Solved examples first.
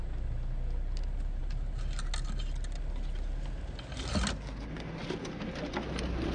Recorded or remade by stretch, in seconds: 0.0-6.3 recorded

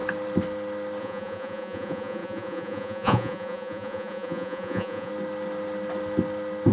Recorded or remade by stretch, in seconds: 0.0-1.0 recorded; 1.0-5.1 remade; 5.1-6.7 recorded

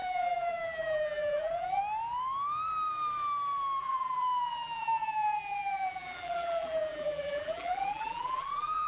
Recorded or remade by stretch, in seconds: 0.0-1.8 remade; 1.8-3.8 recorded; 3.8-8.9 remade

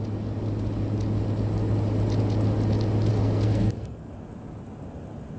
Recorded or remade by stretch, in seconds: 0.0-3.1 recorded; 3.1-4.1 remade; 4.1-5.4 recorded

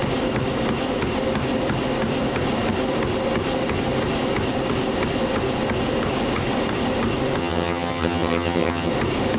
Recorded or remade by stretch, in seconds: 0.0-7.4 recorded; 7.4-8.9 remade; 8.9-9.4 recorded